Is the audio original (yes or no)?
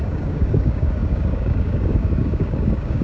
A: no